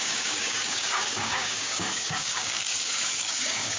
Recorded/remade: remade